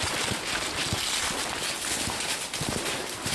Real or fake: real